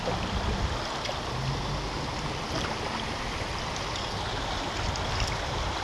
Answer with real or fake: real